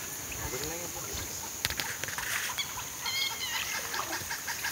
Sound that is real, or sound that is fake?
real